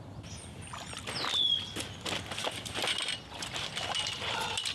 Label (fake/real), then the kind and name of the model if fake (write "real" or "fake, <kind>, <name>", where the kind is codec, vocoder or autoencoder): real